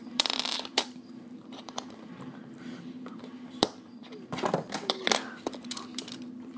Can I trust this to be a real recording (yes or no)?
no